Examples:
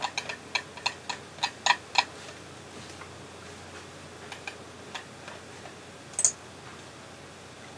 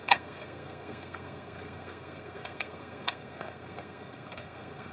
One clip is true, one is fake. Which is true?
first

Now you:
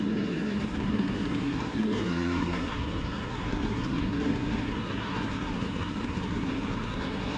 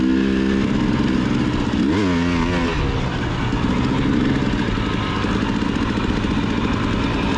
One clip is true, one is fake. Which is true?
second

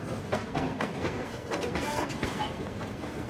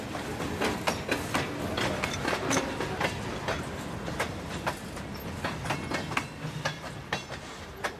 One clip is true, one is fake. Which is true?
second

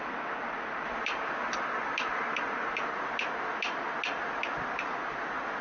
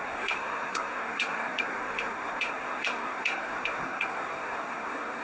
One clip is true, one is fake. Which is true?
first